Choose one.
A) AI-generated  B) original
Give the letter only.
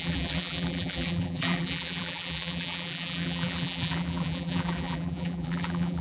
A